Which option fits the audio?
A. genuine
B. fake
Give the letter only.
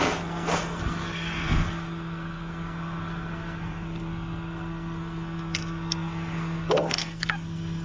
B